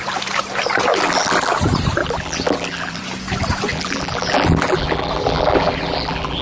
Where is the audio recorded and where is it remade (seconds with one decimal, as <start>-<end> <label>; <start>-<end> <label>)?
0.0-0.9 recorded; 0.9-1.5 remade; 1.5-2.0 recorded; 2.0-3.0 remade; 3.0-3.7 recorded; 3.7-6.4 remade